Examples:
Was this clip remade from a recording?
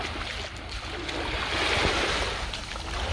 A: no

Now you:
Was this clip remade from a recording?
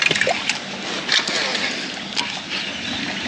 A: no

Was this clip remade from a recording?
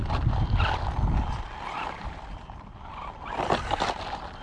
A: no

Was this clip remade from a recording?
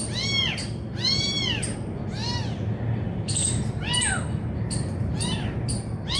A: no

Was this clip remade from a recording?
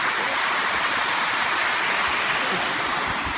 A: no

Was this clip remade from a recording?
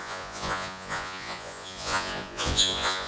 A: yes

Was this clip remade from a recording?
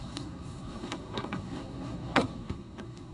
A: yes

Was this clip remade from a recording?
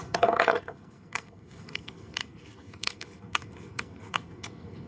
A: yes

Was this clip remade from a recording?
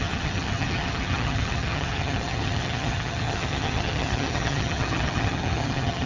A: yes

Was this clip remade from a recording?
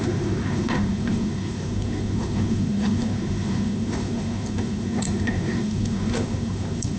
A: yes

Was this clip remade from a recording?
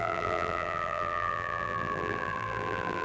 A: yes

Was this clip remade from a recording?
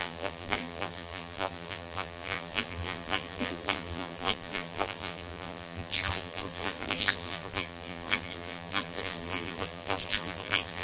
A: yes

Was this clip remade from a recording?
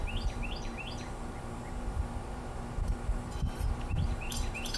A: yes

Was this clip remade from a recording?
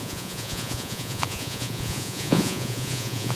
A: yes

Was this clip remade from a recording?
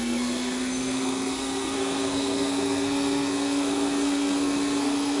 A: yes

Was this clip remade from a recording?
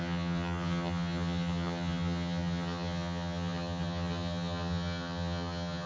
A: yes